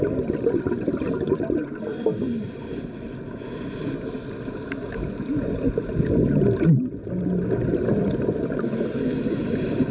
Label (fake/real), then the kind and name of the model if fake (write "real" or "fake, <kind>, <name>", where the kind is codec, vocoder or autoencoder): real